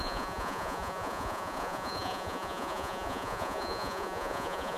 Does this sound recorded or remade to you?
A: remade